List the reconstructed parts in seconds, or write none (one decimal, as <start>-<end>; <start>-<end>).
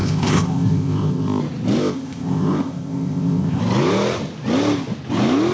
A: 0.0-1.4; 1.8-3.6